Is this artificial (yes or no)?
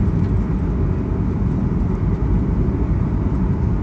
no